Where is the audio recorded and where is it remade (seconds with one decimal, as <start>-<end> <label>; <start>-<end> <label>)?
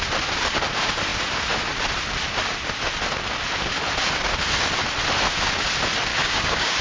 0.0-6.1 recorded; 6.1-6.8 remade